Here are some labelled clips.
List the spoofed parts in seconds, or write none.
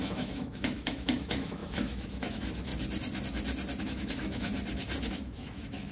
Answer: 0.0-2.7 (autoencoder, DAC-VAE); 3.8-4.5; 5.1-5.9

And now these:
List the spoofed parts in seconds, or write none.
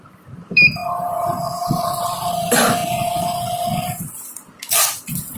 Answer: 0.0-2.8 (vocoder, BigVGAN v2); 4.1-5.4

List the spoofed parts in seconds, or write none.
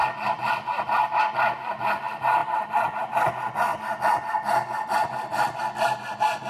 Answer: 2.4-3.0 (vocoder, BigVGAN v2)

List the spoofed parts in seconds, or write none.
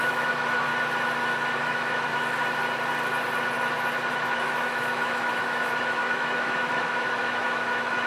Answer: 0.0-0.7 (autoencoder, DAC-VAE); 1.6-2.1; 4.1-8.1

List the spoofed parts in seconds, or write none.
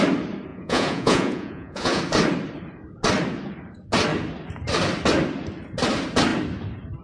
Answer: 0.5-2.0 (vocoder, Vocos)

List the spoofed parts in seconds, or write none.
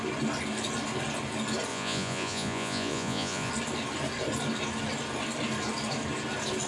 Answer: 1.7-3.5 (vocoder, Vocos)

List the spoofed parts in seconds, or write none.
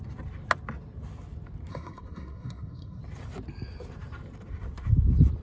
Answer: 1.7-3.0 (codec, SNAC)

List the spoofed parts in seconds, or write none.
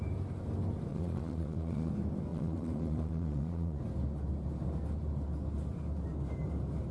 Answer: 0.9-1.9 (vocoder, Vocos); 2.3-3.8